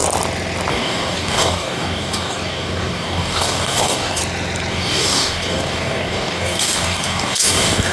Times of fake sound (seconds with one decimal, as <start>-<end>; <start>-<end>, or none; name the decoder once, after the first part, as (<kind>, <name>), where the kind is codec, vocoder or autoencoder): 0.7-4.2 (codec, DAC); 4.7-7.9